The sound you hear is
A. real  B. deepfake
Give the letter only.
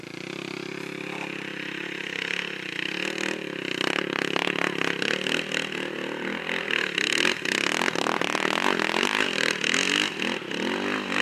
A